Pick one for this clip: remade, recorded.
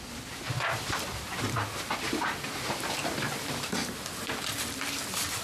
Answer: recorded